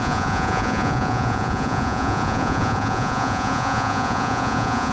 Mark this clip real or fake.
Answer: fake